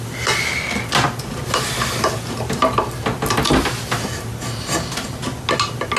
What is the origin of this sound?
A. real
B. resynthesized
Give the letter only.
A